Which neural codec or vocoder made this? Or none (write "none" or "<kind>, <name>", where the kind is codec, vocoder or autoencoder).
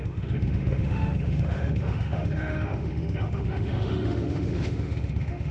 autoencoder, DAC-VAE